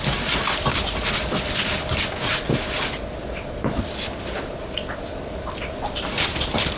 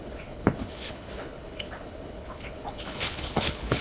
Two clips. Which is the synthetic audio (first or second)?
second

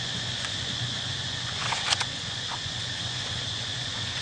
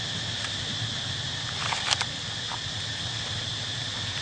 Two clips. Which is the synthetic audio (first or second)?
first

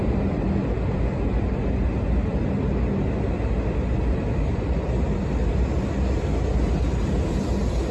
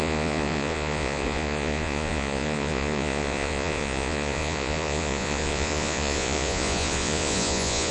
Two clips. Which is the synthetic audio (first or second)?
second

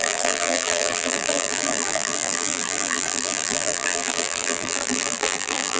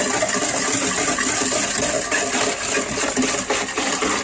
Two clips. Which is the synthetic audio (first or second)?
first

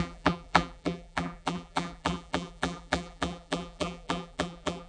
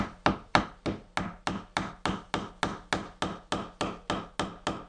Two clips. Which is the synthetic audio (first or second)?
first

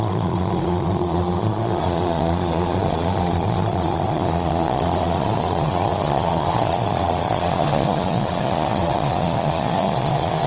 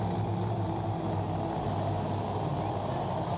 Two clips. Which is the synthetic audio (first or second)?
first